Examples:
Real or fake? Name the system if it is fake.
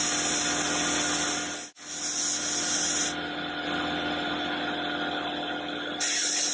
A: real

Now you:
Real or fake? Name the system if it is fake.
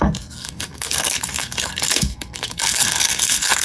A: fake, codec, SNAC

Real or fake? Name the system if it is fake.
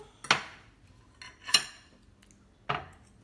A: real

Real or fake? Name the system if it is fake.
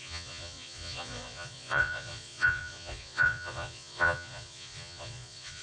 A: fake, vocoder, Vocos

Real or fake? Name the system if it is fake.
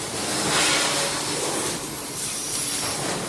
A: real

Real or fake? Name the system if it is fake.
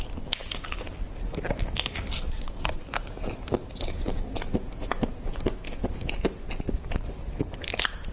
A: real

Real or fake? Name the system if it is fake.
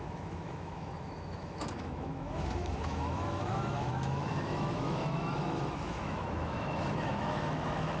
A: fake, autoencoder, DAC-VAE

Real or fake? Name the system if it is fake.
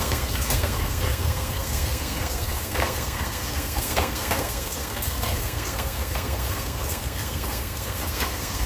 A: fake, codec, SNAC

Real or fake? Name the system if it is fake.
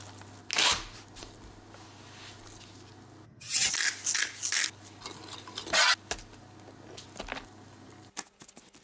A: real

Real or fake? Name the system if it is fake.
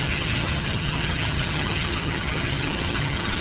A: fake, vocoder, HiFi-GAN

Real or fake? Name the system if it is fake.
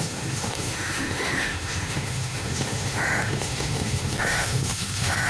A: fake, autoencoder, DAC-VAE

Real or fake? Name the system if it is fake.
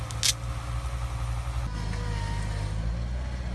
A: real